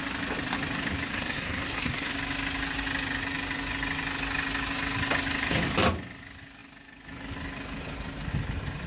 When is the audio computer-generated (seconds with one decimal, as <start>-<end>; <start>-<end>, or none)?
1.1-2.1